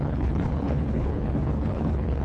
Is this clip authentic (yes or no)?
no